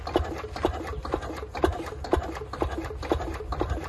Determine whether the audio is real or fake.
real